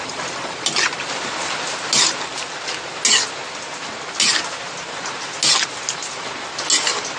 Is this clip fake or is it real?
real